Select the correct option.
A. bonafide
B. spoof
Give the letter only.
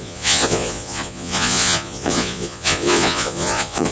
B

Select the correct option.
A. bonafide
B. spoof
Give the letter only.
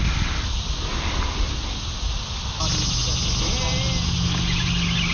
A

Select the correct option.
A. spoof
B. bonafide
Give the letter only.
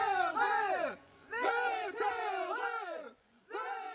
A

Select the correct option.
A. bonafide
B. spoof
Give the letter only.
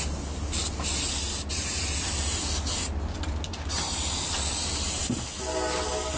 A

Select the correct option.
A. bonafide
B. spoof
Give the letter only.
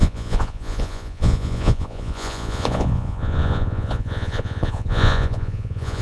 B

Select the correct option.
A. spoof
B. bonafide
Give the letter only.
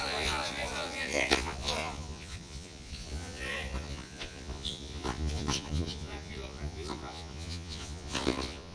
A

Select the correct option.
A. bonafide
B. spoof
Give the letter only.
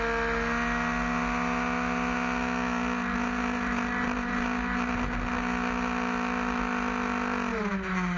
A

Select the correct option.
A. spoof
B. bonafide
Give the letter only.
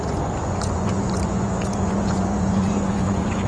A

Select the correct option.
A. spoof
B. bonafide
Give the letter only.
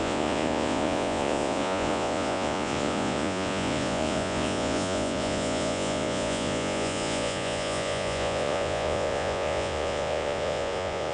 A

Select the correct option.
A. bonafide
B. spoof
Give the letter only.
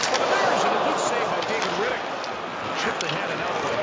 A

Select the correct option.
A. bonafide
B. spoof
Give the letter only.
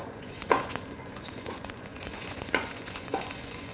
B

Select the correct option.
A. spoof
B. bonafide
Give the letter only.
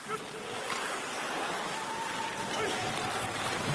B